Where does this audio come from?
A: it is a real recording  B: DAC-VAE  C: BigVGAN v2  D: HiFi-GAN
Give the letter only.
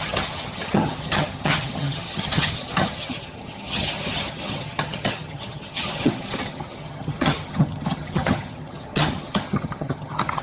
D